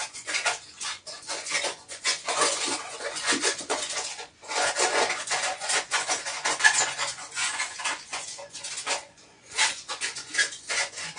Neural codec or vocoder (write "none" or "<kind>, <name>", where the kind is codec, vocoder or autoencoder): vocoder, Vocos